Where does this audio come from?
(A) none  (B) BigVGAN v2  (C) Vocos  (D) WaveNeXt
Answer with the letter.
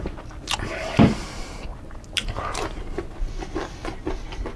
A